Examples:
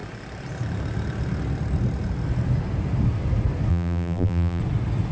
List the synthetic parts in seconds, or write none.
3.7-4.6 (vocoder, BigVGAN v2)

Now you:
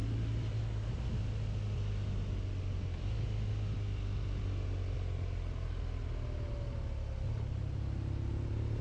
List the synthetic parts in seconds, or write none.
0.0-0.6 (vocoder, BigVGAN v2)

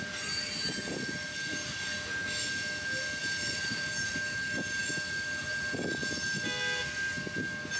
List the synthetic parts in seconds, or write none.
3.2-4.2 (vocoder, BigVGAN v2)

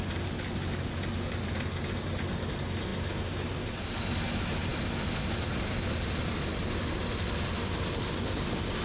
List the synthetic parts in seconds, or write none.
none